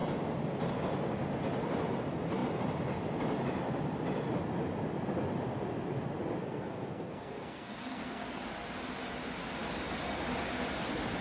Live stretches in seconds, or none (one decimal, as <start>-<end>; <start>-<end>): 0.0-6.4; 8.4-11.2